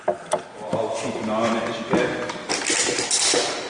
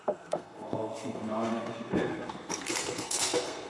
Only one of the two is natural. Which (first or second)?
first